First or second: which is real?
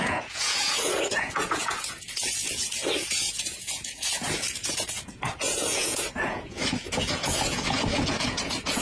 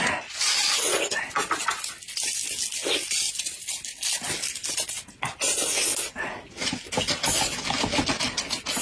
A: second